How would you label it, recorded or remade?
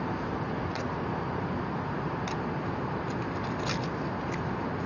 recorded